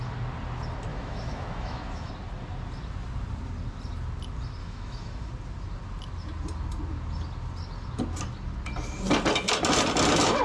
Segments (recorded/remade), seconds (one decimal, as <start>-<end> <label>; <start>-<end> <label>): 0.0-0.9 recorded; 0.9-2.1 remade; 2.1-4.6 recorded; 4.6-5.3 remade; 5.3-10.4 recorded